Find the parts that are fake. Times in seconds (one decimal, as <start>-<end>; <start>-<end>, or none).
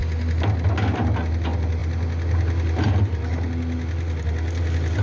none